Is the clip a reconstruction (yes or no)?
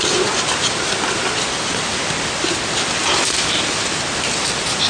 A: no